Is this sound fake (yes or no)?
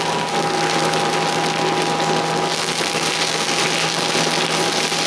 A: no